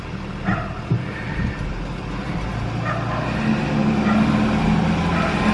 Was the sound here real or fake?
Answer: real